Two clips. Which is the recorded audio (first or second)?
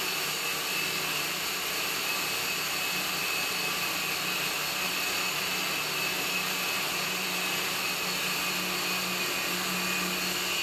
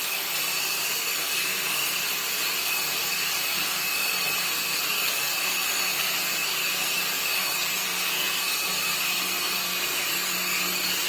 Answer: first